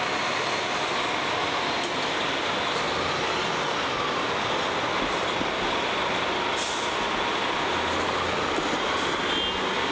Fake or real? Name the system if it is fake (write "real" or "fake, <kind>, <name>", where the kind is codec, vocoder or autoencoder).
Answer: real